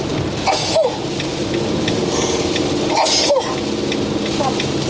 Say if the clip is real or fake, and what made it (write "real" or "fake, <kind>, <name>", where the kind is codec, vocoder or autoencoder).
real